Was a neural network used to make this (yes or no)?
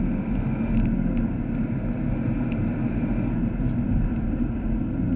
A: no